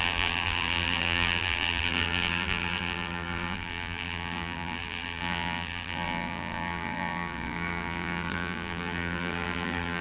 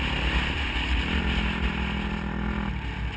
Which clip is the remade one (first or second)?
first